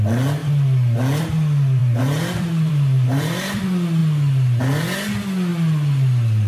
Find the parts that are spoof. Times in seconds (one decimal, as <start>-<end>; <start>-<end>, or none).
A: 1.8-3.6